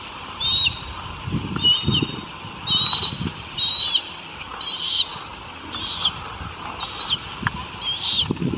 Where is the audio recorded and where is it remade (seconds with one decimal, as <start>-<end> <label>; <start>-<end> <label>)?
0.0-3.0 recorded; 3.0-3.7 remade; 3.7-8.6 recorded

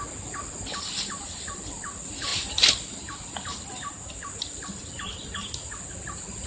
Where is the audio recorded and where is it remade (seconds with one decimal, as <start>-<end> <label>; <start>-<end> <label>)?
0.0-6.5 recorded

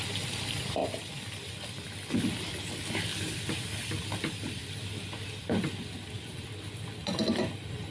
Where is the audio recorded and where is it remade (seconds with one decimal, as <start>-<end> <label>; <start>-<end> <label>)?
0.0-0.8 recorded; 0.8-2.1 remade; 2.1-7.9 recorded